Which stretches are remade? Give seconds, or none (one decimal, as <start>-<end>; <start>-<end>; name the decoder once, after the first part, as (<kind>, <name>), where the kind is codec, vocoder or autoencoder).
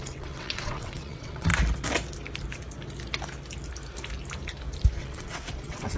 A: 0.0-1.5 (vocoder, WaveNeXt); 5.0-6.0